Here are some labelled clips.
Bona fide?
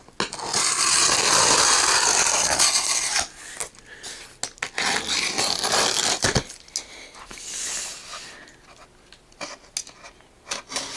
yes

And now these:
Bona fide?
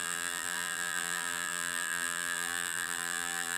no